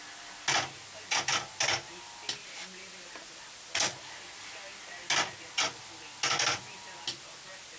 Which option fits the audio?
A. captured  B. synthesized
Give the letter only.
A